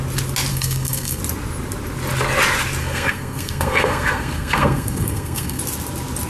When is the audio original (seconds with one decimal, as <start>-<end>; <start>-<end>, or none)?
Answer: 0.0-0.5; 1.2-2.8; 5.6-6.3

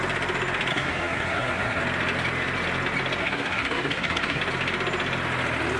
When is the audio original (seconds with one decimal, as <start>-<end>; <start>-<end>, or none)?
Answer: 0.0-0.7; 1.8-3.2; 4.4-5.8